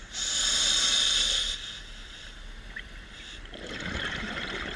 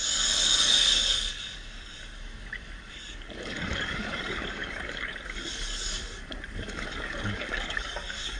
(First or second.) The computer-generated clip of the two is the second